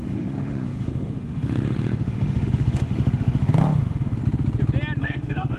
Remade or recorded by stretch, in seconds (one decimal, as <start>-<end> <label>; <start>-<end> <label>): 0.0-4.2 remade; 4.2-5.0 recorded; 5.0-5.6 remade